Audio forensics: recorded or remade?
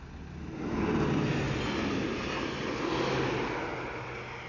recorded